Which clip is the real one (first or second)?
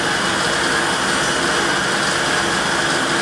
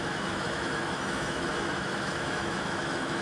first